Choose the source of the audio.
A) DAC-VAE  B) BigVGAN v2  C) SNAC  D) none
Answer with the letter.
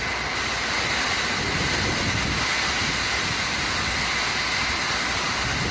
D